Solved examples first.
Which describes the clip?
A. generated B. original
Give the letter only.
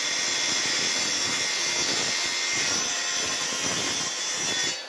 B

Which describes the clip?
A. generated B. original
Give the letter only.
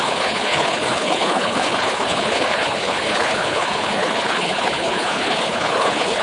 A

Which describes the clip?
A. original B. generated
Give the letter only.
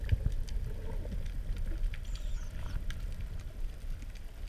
A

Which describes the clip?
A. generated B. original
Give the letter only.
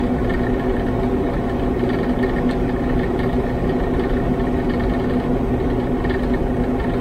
B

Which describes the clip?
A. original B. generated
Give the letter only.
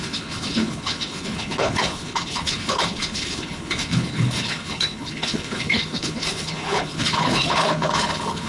B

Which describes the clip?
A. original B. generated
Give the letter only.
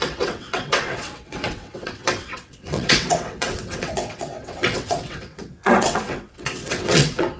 B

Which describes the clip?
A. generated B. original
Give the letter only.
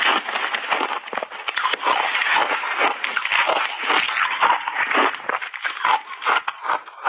B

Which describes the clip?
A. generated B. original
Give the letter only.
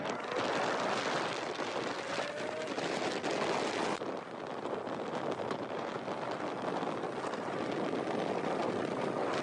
B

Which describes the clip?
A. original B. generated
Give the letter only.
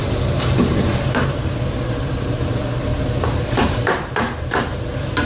B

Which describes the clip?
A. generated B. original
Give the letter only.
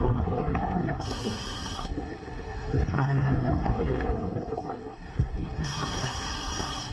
A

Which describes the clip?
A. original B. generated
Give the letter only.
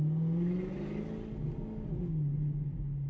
A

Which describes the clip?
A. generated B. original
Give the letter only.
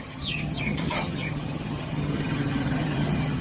A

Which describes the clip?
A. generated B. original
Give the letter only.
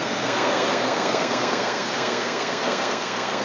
A